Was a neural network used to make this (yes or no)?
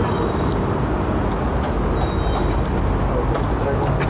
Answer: no